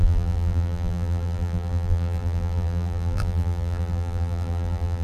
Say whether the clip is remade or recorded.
remade